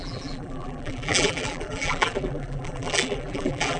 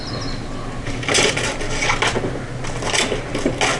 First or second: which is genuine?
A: second